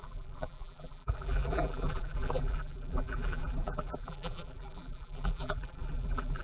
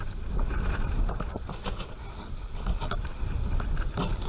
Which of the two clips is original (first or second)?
second